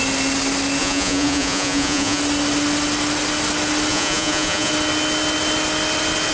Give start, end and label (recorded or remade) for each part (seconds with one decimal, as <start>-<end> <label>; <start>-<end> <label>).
0.0-0.8 recorded; 0.8-2.2 remade; 2.2-3.9 recorded; 3.9-4.7 remade; 4.7-6.3 recorded